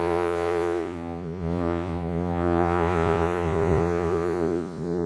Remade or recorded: remade